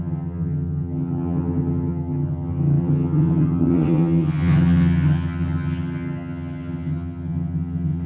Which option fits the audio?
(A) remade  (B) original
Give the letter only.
A